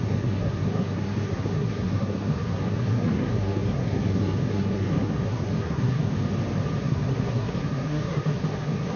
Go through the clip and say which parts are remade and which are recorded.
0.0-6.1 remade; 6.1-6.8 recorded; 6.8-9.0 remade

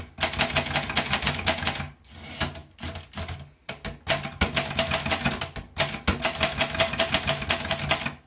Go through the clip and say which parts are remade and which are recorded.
0.0-8.3 recorded

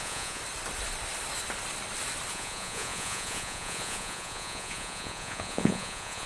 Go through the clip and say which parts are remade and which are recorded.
0.0-0.4 remade; 0.4-2.3 recorded; 2.3-6.3 remade

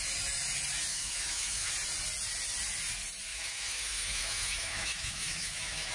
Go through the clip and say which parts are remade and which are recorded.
0.0-0.9 recorded; 0.9-1.7 remade; 1.7-3.3 recorded; 3.3-5.9 remade

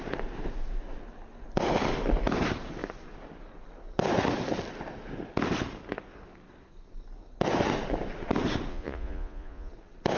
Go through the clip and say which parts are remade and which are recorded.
0.0-8.7 recorded; 8.7-9.7 remade; 9.7-10.2 recorded

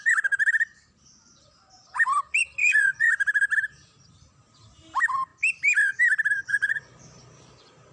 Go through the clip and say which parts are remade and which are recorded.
0.0-2.6 recorded; 2.6-3.1 remade; 3.1-6.4 recorded; 6.4-7.0 remade; 7.0-7.9 recorded

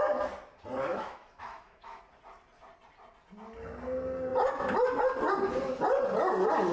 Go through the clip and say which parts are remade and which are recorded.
0.0-0.9 recorded; 0.9-2.0 remade; 2.0-6.7 recorded

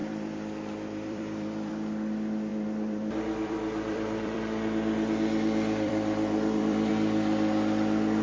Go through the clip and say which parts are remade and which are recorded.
0.0-1.7 remade; 1.7-2.5 recorded; 2.5-6.9 remade; 6.9-8.2 recorded